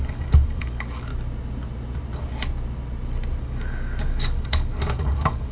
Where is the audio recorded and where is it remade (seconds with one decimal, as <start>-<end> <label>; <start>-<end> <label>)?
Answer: 0.0-1.1 remade; 1.1-3.4 recorded; 3.4-5.5 remade